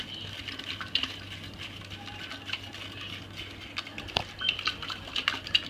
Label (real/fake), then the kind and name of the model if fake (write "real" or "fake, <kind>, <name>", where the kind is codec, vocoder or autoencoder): real